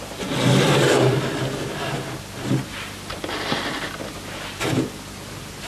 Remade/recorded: recorded